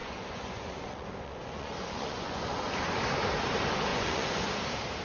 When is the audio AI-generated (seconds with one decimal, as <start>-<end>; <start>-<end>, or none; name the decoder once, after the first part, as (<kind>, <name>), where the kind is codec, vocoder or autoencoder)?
0.0-3.0 (vocoder, Vocos); 3.9-4.5